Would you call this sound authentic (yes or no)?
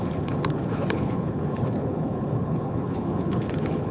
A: no